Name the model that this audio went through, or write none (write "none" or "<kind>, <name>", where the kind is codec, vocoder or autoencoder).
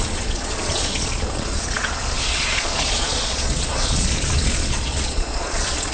vocoder, Vocos